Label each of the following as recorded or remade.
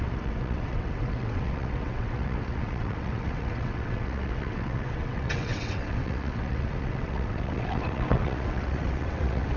remade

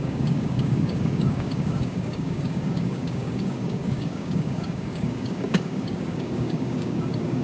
remade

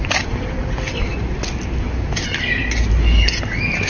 recorded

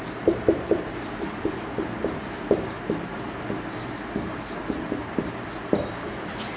remade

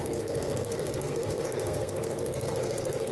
remade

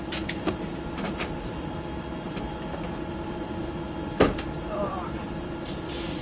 remade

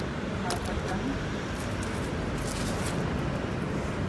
recorded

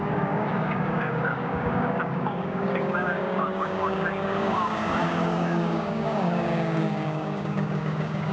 remade